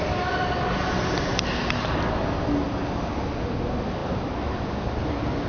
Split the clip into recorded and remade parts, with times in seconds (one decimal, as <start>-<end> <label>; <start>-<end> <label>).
0.0-5.5 recorded

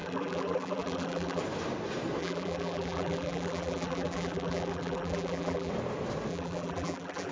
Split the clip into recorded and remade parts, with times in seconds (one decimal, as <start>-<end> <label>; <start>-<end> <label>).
0.0-1.4 remade; 1.4-2.2 recorded; 2.2-5.7 remade; 5.7-6.3 recorded; 6.3-7.3 remade

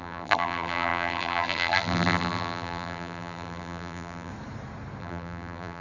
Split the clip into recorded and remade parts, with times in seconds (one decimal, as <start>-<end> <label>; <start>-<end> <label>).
0.0-4.3 remade; 4.3-5.0 recorded; 5.0-5.8 remade

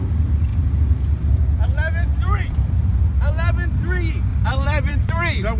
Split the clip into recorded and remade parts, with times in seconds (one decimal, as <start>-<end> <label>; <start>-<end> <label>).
0.0-2.1 recorded; 2.1-3.3 remade; 3.3-4.3 recorded; 4.3-5.1 remade; 5.1-5.6 recorded

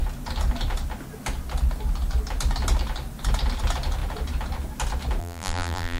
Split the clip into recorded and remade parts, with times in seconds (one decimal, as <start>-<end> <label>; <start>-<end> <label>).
0.0-5.2 recorded; 5.2-6.0 remade